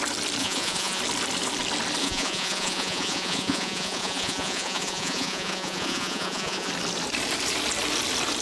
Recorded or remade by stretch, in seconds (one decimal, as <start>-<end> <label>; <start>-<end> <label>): 0.0-0.4 recorded; 0.4-1.0 remade; 1.0-2.0 recorded; 2.0-6.7 remade; 6.7-8.4 recorded